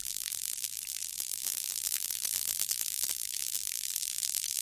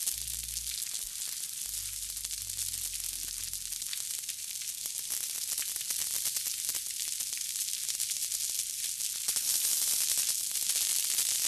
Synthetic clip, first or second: first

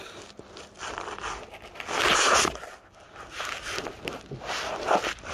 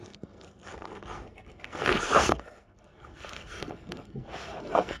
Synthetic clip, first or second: second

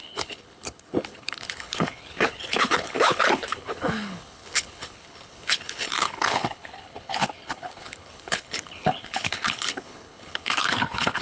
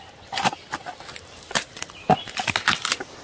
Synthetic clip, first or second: first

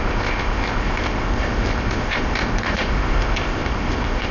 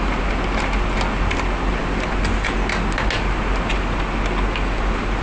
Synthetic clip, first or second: first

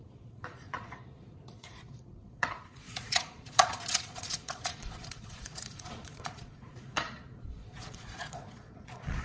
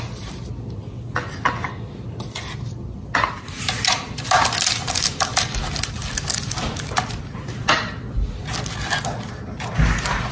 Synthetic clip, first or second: first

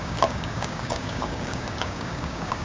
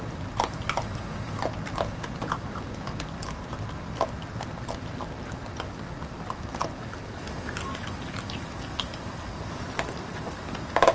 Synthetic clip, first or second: first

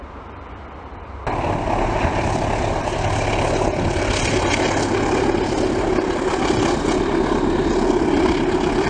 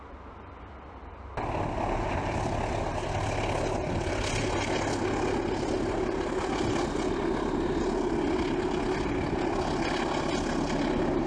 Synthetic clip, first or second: first